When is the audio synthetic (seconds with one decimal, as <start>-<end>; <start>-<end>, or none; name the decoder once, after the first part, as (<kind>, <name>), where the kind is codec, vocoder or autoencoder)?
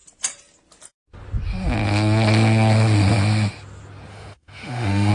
4.1-5.1 (autoencoder, DAC-VAE)